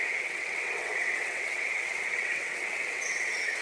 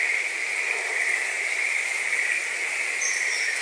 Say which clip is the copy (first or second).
first